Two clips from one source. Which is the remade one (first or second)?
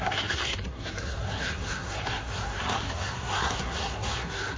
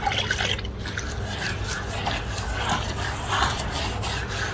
first